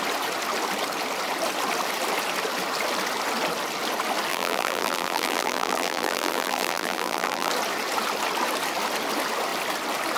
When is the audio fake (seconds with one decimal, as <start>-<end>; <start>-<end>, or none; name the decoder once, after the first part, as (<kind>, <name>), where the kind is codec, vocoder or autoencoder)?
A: 4.3-7.5 (vocoder, BigVGAN v2)